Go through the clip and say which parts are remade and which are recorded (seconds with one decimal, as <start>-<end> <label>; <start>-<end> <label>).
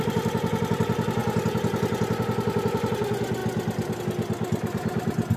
0.0-5.4 recorded